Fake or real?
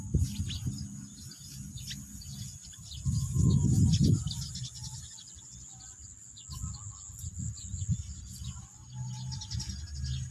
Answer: real